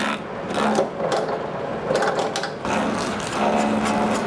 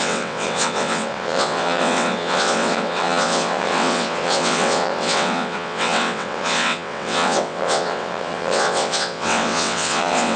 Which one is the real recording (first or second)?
first